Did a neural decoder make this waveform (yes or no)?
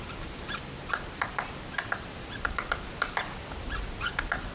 no